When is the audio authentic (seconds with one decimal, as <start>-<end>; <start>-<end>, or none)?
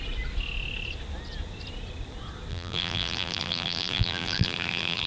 0.0-2.5